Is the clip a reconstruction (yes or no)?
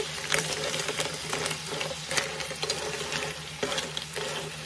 no